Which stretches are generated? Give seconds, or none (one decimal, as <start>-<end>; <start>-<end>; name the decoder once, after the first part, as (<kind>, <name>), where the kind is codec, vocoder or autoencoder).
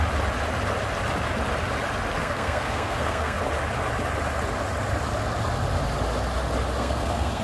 2.2-3.4 (codec, SNAC); 6.8-7.4